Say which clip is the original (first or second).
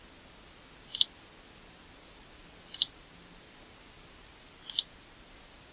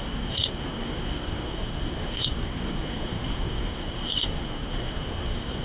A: first